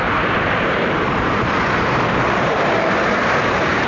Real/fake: fake